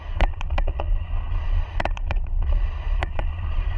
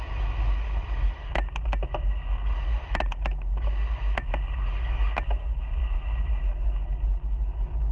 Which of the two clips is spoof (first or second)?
first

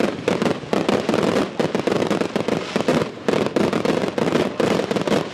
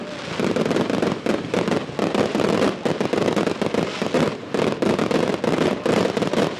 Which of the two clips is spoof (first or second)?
first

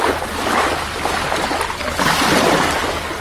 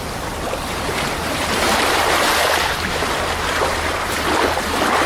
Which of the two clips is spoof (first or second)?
second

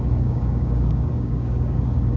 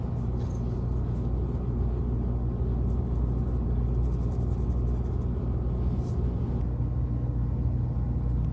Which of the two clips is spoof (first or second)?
first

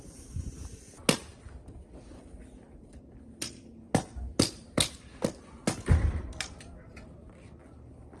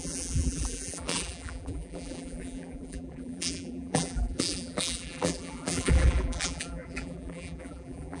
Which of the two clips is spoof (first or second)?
second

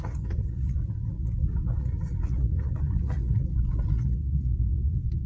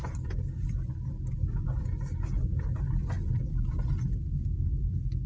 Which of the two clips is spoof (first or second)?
first